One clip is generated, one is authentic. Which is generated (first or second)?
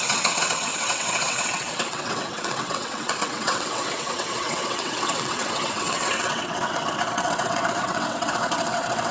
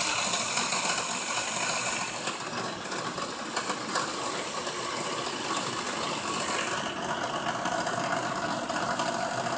first